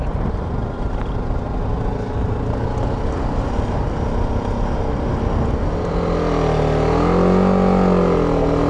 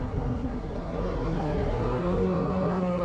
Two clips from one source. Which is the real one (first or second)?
first